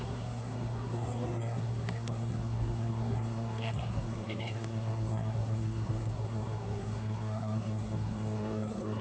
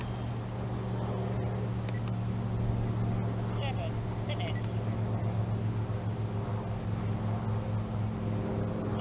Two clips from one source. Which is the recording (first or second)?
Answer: second